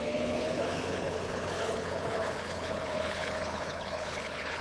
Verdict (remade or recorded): remade